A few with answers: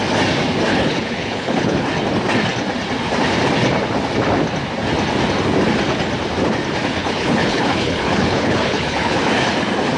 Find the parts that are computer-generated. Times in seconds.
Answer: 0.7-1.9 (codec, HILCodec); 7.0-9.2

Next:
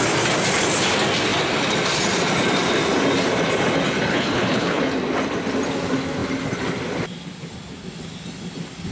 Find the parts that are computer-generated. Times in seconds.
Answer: 4.1-4.8 (codec, HILCodec)